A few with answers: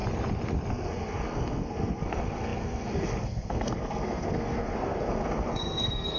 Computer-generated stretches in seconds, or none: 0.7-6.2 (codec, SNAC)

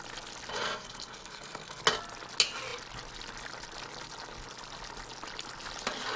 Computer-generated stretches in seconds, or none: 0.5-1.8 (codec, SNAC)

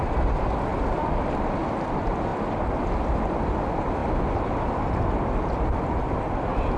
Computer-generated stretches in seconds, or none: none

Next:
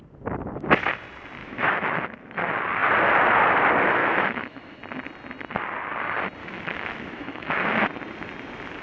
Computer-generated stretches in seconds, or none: 1.4-2.0 (autoencoder, DAC-VAE); 4.0-4.8; 6.4-7.5

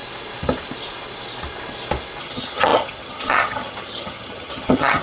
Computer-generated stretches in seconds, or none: 2.2-5.0 (vocoder, HiFi-GAN)

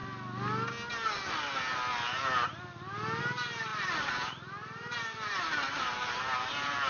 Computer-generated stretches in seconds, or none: 3.2-6.9 (vocoder, BigVGAN v2)